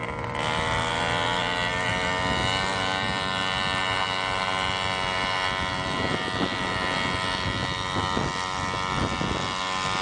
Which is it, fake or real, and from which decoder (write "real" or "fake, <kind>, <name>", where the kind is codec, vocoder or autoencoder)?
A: real